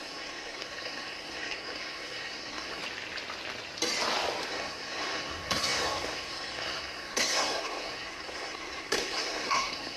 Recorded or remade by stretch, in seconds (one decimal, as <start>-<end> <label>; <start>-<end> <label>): 0.0-2.8 remade; 2.8-4.5 recorded; 4.5-10.0 remade